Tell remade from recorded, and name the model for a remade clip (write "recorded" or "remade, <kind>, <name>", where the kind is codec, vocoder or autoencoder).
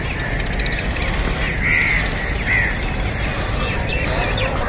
recorded